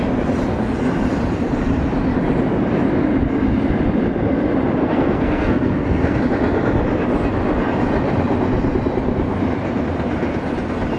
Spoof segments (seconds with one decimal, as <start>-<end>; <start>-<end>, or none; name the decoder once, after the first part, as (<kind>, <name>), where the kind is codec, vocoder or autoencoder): 4.8-6.2 (codec, SNAC)